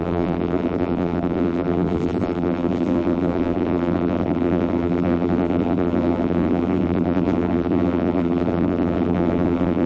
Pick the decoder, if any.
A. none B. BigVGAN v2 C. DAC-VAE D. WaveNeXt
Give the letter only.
B